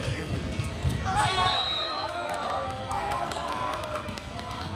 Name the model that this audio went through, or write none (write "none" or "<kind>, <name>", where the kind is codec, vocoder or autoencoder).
codec, SNAC